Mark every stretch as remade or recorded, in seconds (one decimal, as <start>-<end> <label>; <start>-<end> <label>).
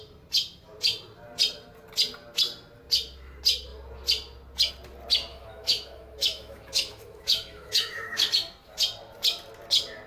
0.0-5.3 recorded; 5.3-8.3 remade; 8.3-10.1 recorded